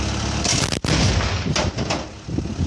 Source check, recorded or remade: recorded